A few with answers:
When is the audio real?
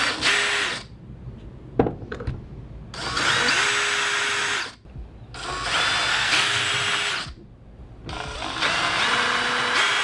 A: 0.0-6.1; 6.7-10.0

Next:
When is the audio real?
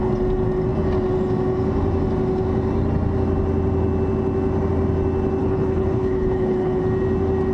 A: 0.0-5.4; 6.8-7.5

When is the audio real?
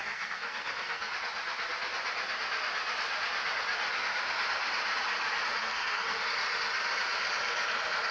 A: 1.1-5.6; 6.2-8.1